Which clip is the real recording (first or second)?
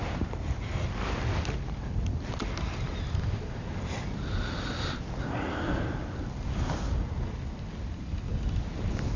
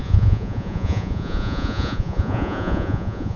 first